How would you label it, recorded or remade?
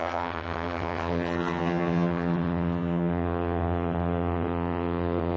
remade